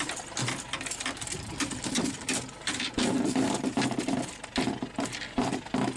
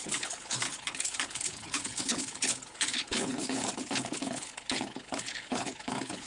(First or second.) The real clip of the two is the first